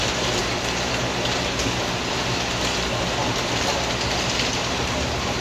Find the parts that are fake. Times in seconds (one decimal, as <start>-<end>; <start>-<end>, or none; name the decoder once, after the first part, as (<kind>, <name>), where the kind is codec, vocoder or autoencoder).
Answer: none